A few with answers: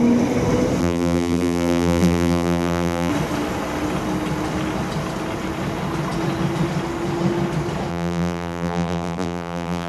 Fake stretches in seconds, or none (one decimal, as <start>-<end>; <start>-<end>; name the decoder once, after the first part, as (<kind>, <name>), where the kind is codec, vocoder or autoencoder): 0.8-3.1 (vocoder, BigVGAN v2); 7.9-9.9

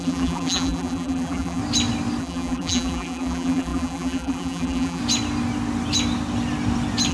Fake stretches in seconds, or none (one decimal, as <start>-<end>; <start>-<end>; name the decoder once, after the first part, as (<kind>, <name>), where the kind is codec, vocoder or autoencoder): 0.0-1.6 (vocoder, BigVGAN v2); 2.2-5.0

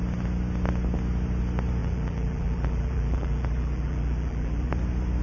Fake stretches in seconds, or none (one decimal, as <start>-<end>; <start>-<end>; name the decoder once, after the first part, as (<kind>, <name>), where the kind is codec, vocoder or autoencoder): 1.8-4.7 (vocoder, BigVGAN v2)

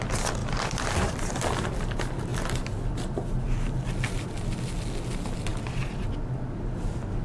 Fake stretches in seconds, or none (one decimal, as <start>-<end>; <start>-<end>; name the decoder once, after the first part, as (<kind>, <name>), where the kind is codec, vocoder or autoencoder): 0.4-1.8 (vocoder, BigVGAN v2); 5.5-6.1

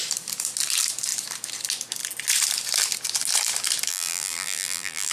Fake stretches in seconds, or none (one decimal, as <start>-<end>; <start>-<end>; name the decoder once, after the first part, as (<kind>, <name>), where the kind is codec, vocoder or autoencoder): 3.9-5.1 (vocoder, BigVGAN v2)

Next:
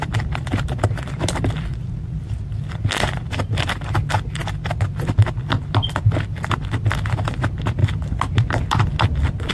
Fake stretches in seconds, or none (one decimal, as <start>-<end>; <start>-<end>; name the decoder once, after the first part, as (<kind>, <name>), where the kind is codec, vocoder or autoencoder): 1.7-3.3 (vocoder, BigVGAN v2)

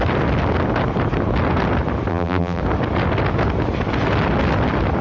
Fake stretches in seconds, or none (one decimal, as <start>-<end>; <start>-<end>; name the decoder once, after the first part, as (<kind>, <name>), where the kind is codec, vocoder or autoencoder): 2.1-2.6 (vocoder, BigVGAN v2)